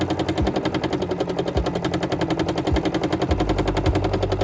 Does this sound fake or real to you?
real